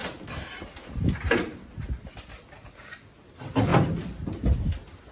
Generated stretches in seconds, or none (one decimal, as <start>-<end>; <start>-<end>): none